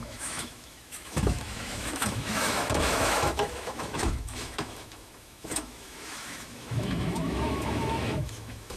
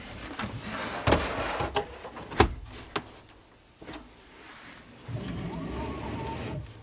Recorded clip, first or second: second